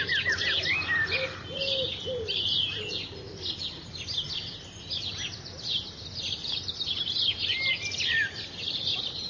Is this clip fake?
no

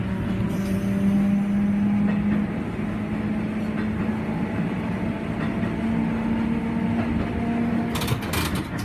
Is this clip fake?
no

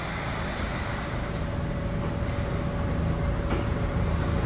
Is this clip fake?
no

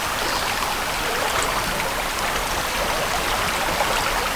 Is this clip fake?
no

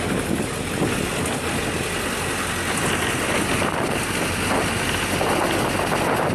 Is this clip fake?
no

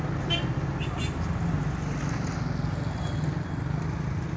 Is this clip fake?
no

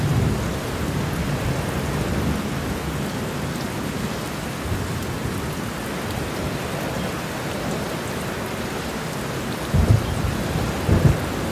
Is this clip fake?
no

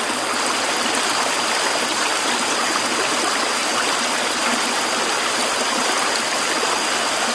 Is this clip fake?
no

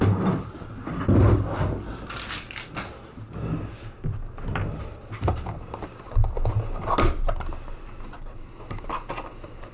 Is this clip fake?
no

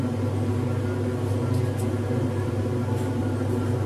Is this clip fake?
yes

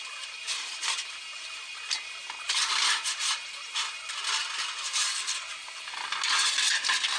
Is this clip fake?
no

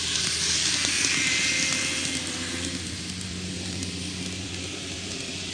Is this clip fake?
yes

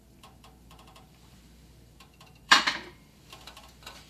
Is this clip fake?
yes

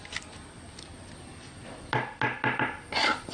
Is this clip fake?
no